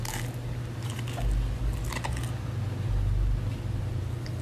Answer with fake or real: real